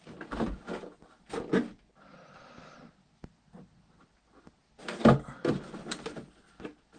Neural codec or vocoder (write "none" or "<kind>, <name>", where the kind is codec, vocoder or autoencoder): none